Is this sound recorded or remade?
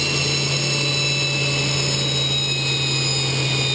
recorded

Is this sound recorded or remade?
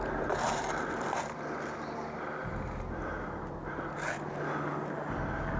recorded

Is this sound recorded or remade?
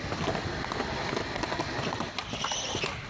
recorded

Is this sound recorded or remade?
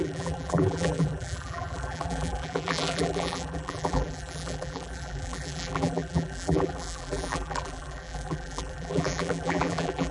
remade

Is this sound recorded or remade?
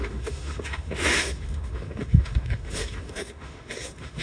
remade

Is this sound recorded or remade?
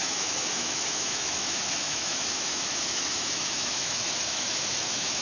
remade